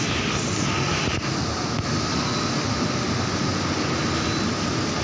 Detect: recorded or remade recorded